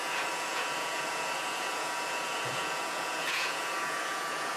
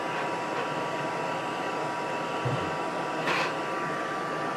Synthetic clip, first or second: first